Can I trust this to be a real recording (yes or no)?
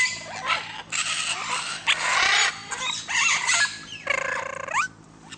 yes